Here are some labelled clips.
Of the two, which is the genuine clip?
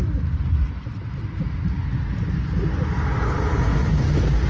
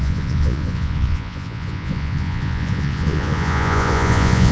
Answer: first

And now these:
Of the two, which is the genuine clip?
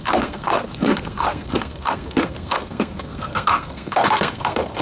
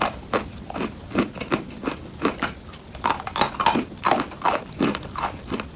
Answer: second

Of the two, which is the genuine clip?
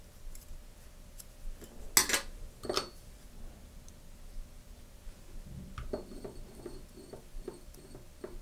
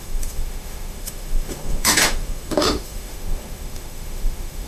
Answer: first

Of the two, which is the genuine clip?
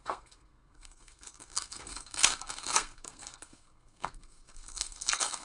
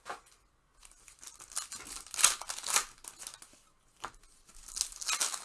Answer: second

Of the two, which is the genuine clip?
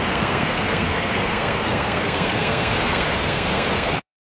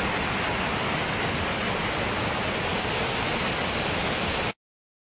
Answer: second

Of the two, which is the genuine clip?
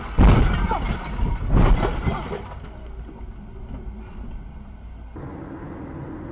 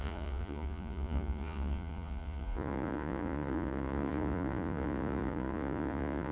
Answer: first